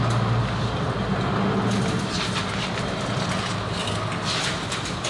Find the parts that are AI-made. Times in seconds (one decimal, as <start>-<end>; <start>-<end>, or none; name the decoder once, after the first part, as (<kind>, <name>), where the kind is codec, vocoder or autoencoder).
none